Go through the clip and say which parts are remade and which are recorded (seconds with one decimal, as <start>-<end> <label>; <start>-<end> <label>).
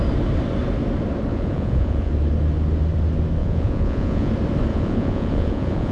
0.0-1.3 recorded; 1.3-2.1 remade; 2.1-3.4 recorded; 3.4-4.3 remade; 4.3-4.7 recorded; 4.7-5.9 remade